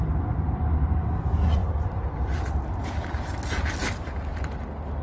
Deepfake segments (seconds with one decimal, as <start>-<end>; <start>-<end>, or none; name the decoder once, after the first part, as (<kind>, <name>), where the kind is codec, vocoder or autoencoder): 1.6-2.8 (vocoder, BigVGAN v2)